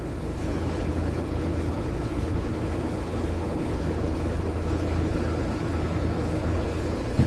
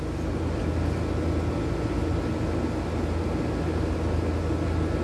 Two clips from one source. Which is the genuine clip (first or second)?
second